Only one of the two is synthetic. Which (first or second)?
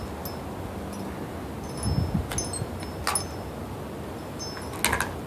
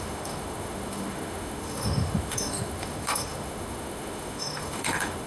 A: second